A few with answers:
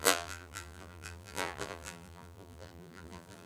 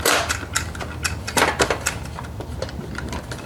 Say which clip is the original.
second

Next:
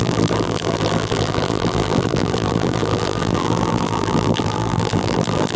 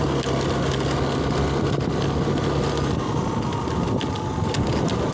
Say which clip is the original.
second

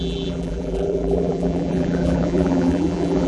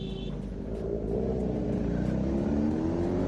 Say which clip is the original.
second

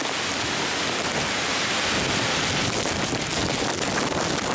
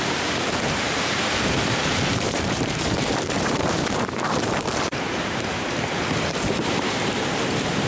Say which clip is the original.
first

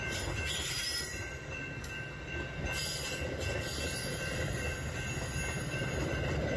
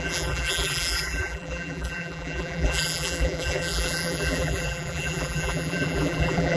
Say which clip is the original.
first